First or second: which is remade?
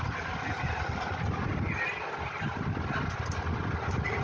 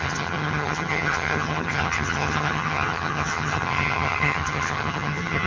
second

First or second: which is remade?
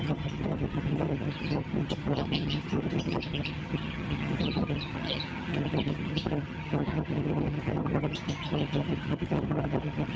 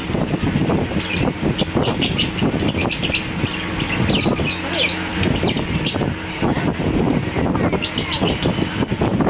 first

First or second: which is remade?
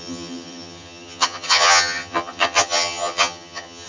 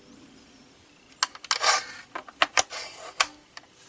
first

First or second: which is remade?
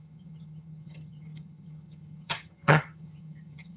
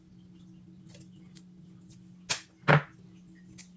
first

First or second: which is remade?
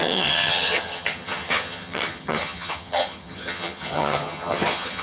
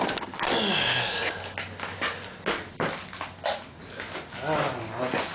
first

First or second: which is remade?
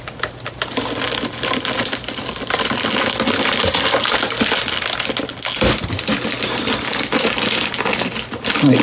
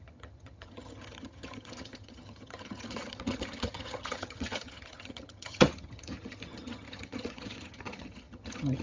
second